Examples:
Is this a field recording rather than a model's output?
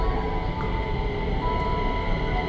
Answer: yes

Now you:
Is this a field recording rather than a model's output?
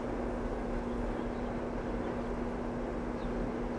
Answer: yes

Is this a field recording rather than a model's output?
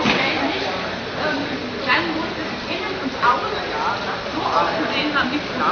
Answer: yes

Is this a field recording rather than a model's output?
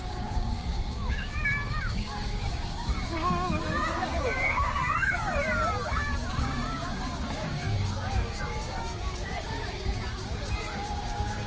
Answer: no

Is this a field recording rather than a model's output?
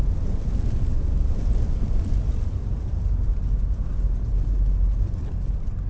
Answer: yes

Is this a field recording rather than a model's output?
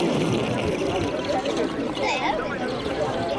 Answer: no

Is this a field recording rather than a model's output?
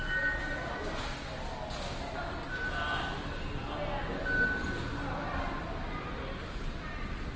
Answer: yes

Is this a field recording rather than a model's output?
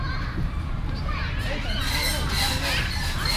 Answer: yes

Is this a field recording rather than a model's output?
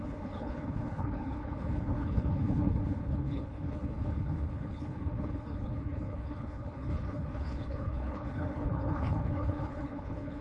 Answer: no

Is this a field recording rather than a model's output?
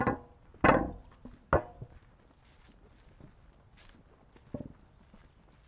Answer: yes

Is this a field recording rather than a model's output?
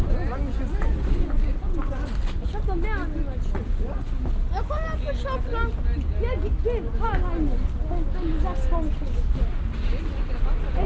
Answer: yes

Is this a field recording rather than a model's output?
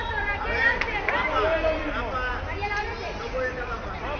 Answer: yes